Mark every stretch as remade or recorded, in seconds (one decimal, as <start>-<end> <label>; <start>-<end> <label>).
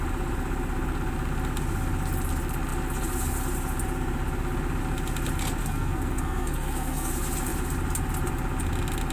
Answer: 0.0-5.6 recorded; 5.6-7.1 remade; 7.1-9.1 recorded